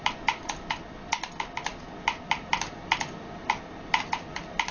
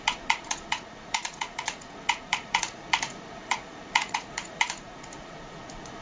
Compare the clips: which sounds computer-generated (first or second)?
second